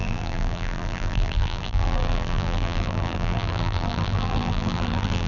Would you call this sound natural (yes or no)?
no